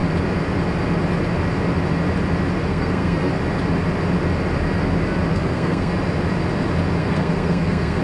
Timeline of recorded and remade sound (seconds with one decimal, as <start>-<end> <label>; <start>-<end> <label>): 0.0-2.7 recorded; 2.7-3.3 remade; 3.3-5.3 recorded; 5.3-5.9 remade; 5.9-7.0 recorded; 7.0-8.0 remade